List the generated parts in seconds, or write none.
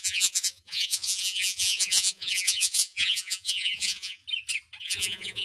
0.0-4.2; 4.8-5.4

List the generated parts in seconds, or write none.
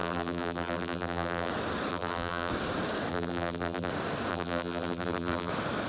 0.0-1.5; 1.9-2.5; 3.1-3.9; 4.3-5.5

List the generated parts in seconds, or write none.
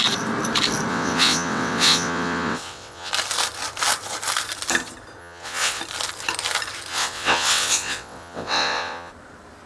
0.9-3.1; 5.2-5.8; 6.9-9.1